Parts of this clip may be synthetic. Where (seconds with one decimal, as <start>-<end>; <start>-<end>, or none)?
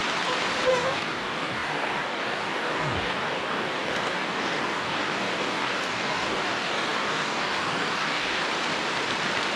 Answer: 0.7-8.4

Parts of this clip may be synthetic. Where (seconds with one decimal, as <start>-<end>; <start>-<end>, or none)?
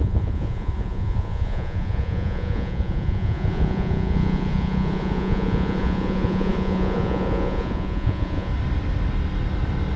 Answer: 0.0-8.5